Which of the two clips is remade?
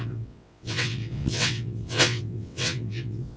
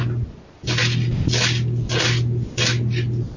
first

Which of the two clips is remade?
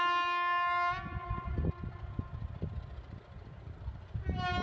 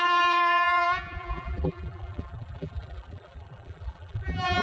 second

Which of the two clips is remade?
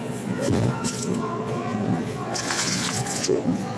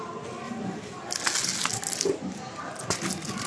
first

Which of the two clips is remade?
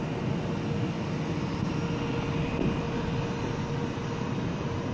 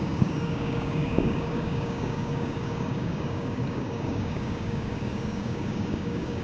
second